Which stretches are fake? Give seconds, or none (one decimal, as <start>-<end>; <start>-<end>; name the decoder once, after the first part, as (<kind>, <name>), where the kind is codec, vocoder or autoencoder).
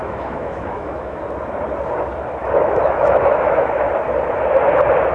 0.0-1.2 (autoencoder, DAC-VAE); 2.4-3.9